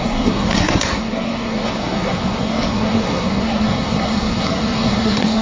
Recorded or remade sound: remade